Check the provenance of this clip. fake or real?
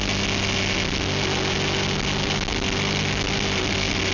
real